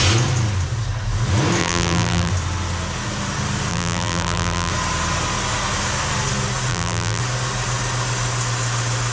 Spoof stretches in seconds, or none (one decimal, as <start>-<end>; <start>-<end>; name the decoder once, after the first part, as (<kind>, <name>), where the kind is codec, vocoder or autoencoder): 1.6-2.3 (vocoder, BigVGAN v2); 3.7-4.7; 6.7-7.2